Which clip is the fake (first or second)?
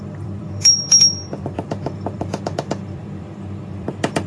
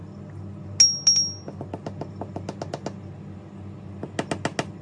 first